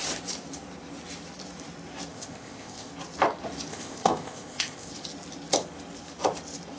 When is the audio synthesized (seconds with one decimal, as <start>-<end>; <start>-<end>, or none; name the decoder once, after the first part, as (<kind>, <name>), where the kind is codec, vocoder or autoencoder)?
2.1-2.9 (codec, ZipCodec); 3.7-4.9

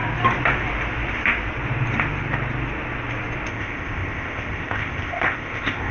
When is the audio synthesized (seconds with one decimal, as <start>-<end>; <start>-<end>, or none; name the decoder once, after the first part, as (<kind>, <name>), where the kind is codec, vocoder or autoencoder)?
3.5-5.9 (codec, ZipCodec)

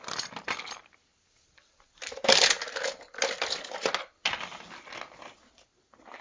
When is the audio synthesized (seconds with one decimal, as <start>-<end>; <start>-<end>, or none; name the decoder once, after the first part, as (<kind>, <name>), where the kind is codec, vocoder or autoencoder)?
none

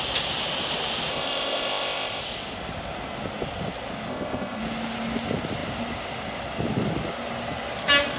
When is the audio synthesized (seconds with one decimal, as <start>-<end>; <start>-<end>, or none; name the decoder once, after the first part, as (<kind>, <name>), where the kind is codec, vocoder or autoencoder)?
1.1-2.2 (codec, ZipCodec); 4.1-4.6

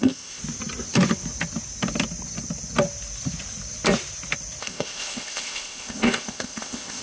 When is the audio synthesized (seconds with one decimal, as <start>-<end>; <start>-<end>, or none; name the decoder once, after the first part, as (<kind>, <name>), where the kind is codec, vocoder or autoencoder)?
0.0-0.4 (codec, ZipCodec); 4.6-7.0

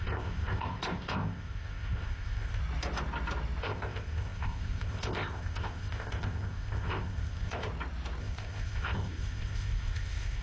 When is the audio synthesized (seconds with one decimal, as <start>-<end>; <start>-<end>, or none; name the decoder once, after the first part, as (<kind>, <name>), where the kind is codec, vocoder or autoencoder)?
0.0-2.6 (codec, ZipCodec); 3.6-7.7; 8.2-10.4

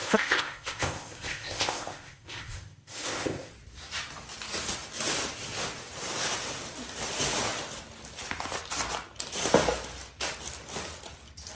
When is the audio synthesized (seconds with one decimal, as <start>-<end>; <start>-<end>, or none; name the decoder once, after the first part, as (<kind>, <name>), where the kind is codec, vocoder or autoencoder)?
0.0-3.5 (codec, ZipCodec)

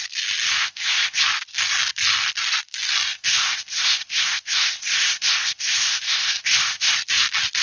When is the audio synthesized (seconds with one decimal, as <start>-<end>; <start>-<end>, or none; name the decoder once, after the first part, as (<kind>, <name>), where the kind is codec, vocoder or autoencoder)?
0.6-1.2 (codec, ZipCodec); 3.1-6.9